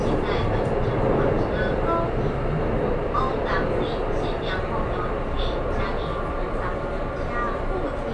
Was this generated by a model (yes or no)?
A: no